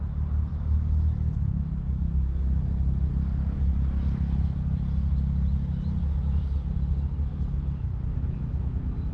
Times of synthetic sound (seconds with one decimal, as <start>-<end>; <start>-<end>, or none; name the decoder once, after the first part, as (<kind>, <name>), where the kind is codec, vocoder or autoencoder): 0.5-3.1 (autoencoder, DAC-VAE); 7.3-8.4